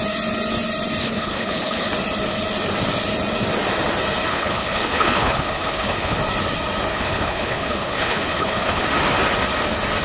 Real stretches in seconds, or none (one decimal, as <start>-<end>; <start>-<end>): 0.0-1.0; 1.9-4.3; 6.2-6.9; 8.8-10.0